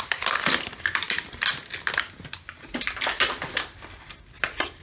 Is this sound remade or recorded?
recorded